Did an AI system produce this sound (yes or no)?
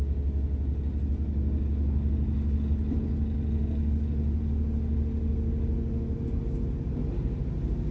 no